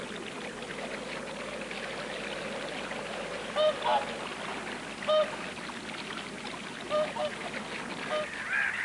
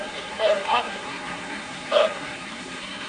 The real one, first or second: first